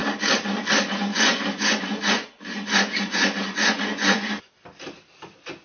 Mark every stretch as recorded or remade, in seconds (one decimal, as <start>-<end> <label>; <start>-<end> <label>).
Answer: 0.0-1.1 recorded; 1.1-4.5 remade; 4.5-5.6 recorded